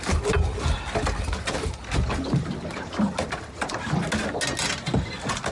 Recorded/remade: recorded